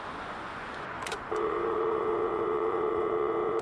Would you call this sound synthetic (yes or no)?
yes